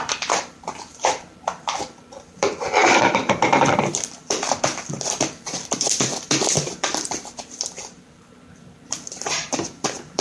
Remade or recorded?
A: remade